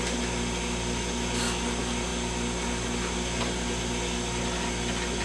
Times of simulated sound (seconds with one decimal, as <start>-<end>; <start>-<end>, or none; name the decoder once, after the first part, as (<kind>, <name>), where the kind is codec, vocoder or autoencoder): none